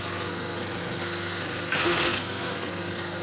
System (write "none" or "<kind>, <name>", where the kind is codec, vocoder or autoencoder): codec, SNAC